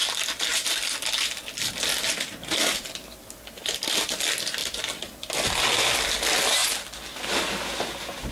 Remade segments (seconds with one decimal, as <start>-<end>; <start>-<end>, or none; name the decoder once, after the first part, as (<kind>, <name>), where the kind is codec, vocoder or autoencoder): none